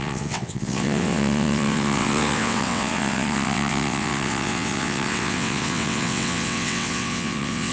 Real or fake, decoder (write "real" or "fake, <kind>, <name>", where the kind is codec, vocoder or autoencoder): fake, vocoder, WaveNeXt